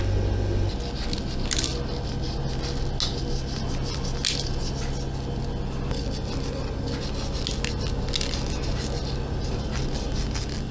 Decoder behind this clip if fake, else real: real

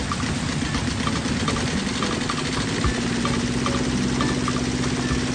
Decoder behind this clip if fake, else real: real